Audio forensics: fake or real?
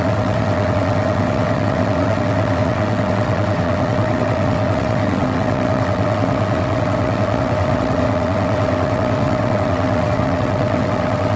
fake